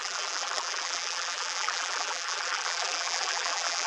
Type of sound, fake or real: fake